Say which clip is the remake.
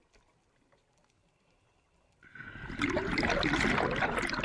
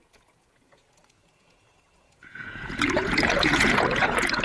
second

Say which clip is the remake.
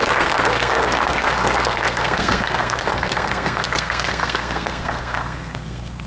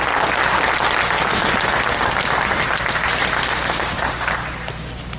first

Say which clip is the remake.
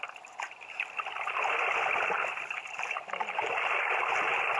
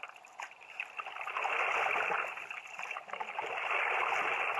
first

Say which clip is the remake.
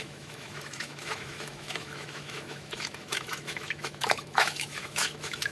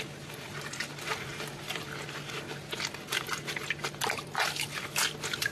first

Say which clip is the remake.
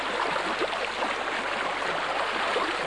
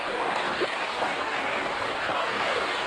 second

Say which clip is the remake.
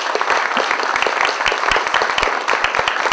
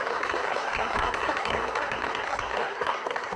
second